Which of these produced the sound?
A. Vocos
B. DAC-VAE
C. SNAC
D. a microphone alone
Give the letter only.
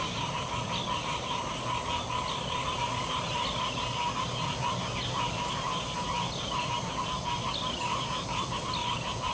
D